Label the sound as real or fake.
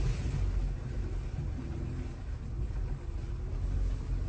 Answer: real